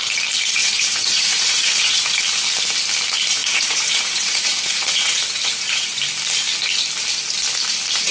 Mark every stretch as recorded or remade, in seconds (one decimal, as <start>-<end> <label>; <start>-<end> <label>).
0.0-0.6 recorded; 0.6-2.2 remade; 2.2-3.4 recorded; 3.4-6.0 remade; 6.0-8.1 recorded